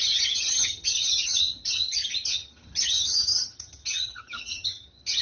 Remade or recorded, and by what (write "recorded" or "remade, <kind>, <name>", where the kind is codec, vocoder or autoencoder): remade, vocoder, HiFi-GAN